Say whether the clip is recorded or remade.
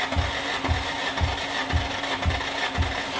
recorded